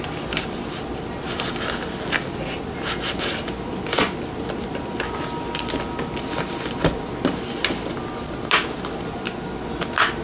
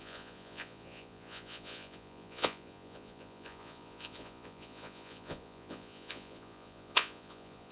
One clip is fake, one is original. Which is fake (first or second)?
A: second